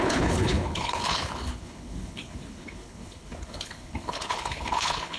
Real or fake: fake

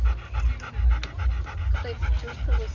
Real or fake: real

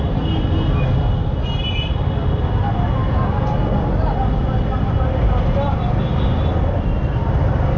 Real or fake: real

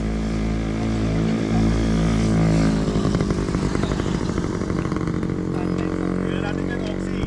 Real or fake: real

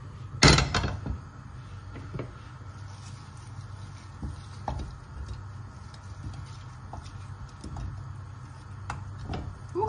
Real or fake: real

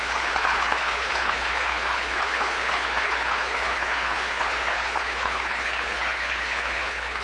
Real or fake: fake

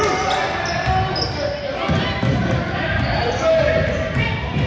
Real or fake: real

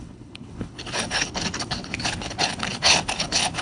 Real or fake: fake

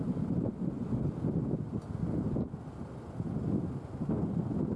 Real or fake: real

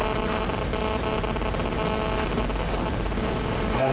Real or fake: real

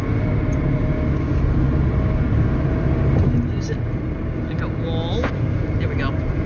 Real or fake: real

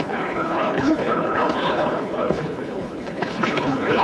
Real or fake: fake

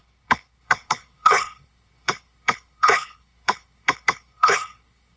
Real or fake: fake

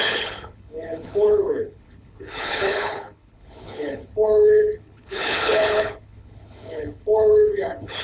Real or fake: fake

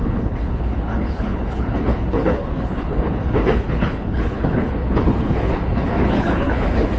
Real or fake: fake